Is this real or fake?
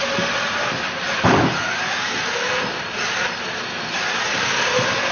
real